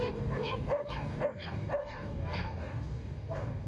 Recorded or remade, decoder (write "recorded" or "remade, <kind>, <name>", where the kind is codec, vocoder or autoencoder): remade, codec, DAC